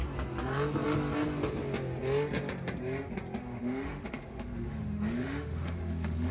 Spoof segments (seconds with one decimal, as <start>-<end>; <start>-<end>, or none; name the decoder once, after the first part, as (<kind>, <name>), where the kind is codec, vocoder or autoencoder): 3.4-6.3 (autoencoder, DAC-VAE)